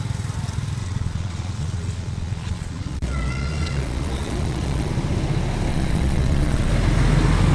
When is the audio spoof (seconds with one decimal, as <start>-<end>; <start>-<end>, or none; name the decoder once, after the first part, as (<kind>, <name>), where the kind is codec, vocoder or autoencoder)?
0.8-4.9 (vocoder, Vocos); 5.7-6.7